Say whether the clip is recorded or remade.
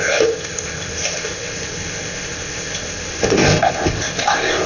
remade